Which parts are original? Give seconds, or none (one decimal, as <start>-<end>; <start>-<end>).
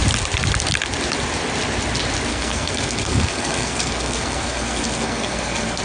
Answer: 0.0-2.3